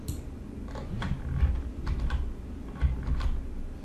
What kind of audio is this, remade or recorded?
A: recorded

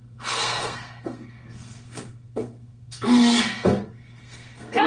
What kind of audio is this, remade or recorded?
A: remade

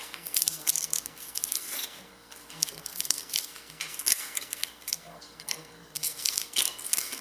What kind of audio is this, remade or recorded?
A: remade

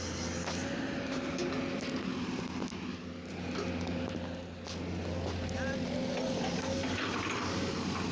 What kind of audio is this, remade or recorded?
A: recorded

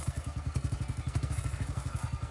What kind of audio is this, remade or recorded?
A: remade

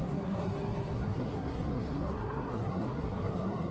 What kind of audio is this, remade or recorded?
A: remade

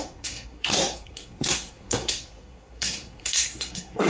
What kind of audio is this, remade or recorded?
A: remade